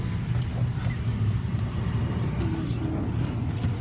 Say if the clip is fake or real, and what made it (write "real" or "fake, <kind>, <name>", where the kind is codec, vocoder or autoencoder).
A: real